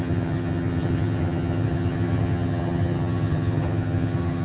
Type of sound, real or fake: fake